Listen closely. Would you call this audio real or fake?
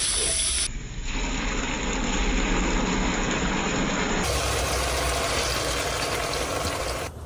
real